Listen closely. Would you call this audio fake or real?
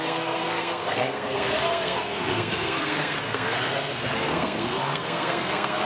fake